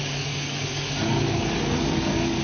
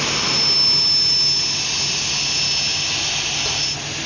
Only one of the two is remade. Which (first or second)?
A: first